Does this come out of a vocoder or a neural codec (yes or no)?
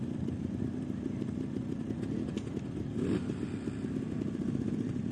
no